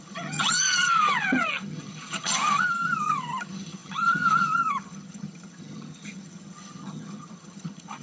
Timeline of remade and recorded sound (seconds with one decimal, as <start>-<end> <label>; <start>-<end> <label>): 0.0-8.0 remade